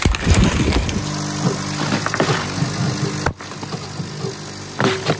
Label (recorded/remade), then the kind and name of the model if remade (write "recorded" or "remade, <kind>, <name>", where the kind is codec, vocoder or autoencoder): recorded